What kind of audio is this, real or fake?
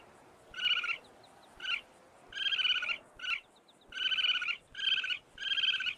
real